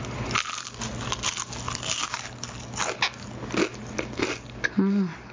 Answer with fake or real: real